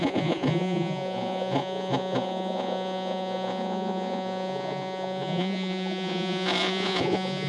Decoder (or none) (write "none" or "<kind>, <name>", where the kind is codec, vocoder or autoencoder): vocoder, Vocos